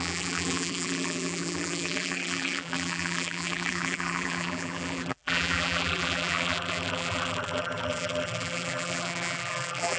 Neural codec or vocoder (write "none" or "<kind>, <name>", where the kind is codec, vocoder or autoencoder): vocoder, BigVGAN v2